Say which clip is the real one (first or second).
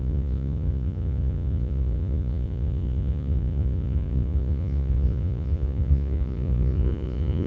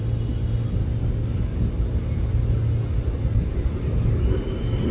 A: second